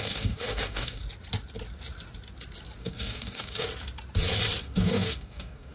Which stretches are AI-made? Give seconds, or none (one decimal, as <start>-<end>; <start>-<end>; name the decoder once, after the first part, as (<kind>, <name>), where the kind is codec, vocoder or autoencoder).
0.0-1.0 (codec, DAC); 2.8-3.7; 4.6-5.7

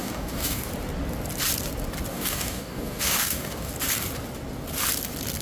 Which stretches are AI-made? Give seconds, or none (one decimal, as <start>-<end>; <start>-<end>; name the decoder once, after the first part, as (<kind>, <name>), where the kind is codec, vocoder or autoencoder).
0.0-0.7 (codec, DAC); 2.1-3.7

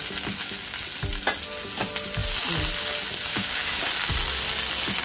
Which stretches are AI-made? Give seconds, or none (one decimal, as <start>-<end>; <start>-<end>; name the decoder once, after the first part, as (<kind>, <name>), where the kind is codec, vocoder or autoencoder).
3.3-3.9 (codec, DAC)

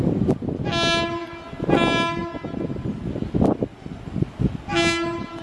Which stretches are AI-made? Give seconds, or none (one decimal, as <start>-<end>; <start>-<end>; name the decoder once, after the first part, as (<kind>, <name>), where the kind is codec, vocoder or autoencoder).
none

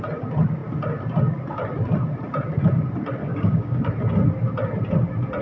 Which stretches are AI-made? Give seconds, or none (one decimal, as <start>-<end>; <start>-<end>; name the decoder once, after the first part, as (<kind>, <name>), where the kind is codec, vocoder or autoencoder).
3.2-3.9 (codec, DAC)

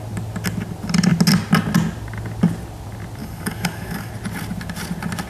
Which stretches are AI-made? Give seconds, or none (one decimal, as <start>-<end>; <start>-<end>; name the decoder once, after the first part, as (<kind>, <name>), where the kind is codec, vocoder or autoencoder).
3.2-4.1 (codec, DAC)

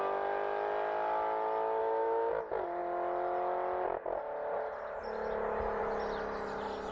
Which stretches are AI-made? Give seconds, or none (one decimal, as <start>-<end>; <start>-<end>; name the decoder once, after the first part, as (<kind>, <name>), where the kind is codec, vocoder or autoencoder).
1.8-2.3 (codec, DAC)